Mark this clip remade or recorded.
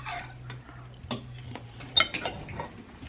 recorded